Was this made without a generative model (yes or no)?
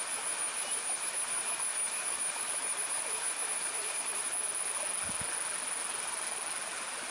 yes